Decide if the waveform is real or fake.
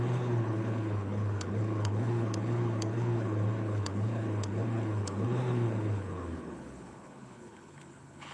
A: fake